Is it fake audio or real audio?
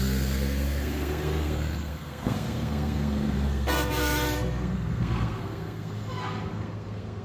fake